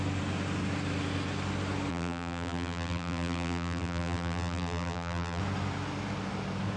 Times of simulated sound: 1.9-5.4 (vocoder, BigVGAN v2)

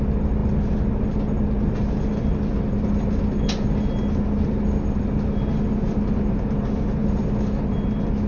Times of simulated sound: none

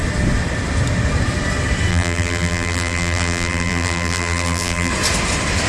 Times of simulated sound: 1.9-4.9 (vocoder, BigVGAN v2)

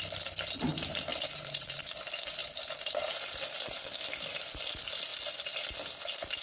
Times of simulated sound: 1.1-1.8 (vocoder, BigVGAN v2); 2.4-3.8